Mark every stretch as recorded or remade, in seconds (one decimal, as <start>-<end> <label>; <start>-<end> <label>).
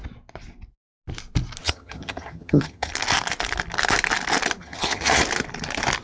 0.0-1.6 recorded; 1.6-2.9 remade; 2.9-4.6 recorded; 4.6-5.2 remade; 5.2-6.0 recorded